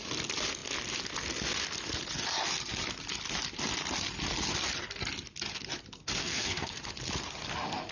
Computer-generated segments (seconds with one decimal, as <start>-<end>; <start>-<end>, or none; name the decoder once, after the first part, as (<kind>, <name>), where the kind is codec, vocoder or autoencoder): 6.2-6.7 (codec, SNAC)